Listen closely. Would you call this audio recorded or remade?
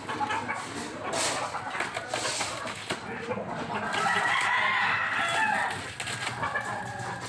recorded